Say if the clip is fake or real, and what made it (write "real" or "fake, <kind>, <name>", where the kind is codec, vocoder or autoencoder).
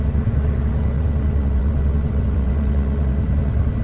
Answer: fake, vocoder, WaveNeXt